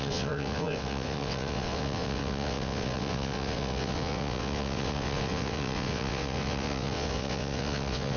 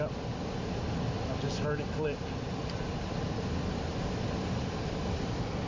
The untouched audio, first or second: second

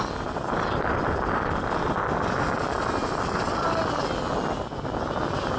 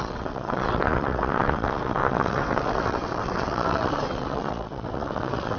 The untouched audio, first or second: first